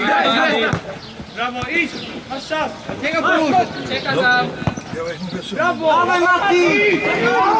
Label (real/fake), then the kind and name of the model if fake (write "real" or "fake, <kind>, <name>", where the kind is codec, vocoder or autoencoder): real